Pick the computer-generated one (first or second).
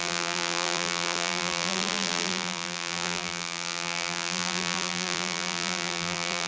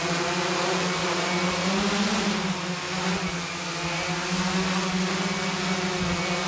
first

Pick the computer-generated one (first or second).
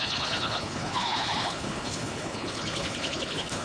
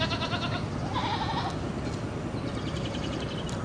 first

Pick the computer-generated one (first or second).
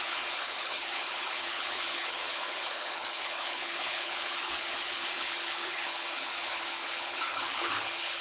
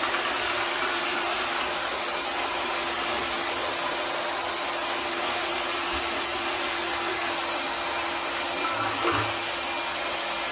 first